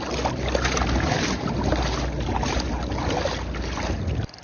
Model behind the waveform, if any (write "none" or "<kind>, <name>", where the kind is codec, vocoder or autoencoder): none